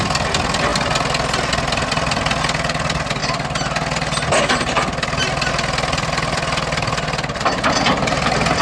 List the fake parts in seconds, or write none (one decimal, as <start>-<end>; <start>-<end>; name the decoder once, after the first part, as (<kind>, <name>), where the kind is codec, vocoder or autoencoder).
none